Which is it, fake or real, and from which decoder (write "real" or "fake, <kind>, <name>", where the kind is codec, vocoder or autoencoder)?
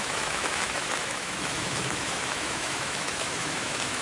fake, autoencoder, DAC-VAE